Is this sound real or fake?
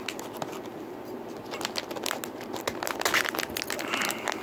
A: real